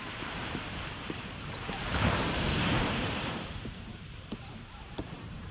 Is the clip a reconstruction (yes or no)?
yes